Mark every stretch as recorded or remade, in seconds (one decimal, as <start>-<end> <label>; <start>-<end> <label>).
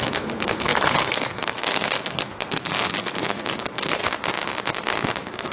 0.0-4.0 remade; 4.0-4.7 recorded; 4.7-5.5 remade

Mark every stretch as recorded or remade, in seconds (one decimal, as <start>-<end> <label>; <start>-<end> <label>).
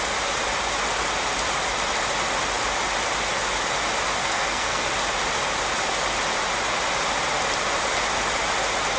0.0-4.2 recorded; 4.2-4.9 remade; 4.9-9.0 recorded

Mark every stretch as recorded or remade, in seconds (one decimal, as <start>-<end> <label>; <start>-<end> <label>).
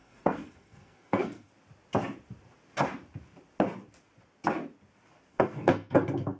0.0-1.5 remade; 1.5-5.3 recorded; 5.3-6.4 remade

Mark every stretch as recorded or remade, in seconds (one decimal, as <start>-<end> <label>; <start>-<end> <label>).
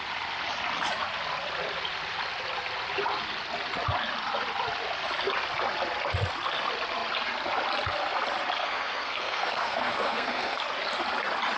0.0-8.6 recorded; 8.6-10.6 remade; 10.6-11.6 recorded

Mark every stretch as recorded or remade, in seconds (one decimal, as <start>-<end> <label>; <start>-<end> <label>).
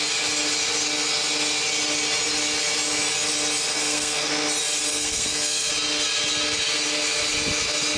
0.0-3.7 recorded; 3.7-4.3 remade; 4.3-4.9 recorded; 4.9-5.7 remade; 5.7-8.0 recorded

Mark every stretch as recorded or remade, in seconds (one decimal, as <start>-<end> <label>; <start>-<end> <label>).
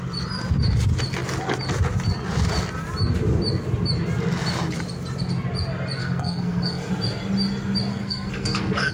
0.0-6.0 recorded; 6.0-6.9 remade; 6.9-7.9 recorded; 7.9-8.9 remade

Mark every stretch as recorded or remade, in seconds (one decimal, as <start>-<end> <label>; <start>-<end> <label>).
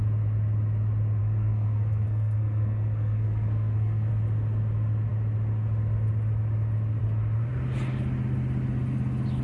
0.0-1.2 recorded; 1.2-4.1 remade; 4.1-9.4 recorded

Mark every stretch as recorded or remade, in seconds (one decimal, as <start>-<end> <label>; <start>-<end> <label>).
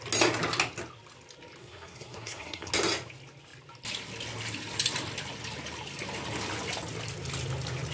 0.0-1.6 recorded; 1.6-2.7 remade; 2.7-7.9 recorded